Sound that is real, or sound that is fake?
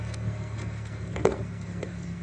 fake